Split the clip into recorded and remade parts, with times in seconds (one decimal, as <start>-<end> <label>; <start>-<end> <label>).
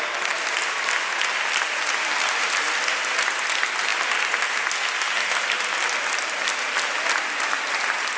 0.0-8.2 recorded